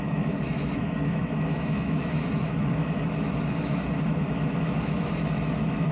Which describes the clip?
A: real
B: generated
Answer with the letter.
B